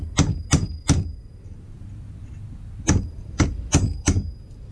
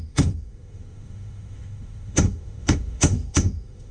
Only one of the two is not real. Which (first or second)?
second